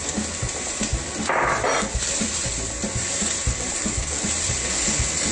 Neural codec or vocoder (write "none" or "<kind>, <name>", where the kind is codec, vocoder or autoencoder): vocoder, BigVGAN v2